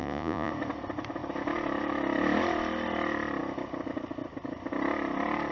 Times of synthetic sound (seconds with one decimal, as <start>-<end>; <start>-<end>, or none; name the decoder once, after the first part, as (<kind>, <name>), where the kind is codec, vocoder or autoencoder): 0.0-0.5 (vocoder, Vocos)